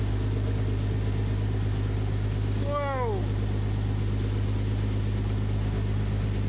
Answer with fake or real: real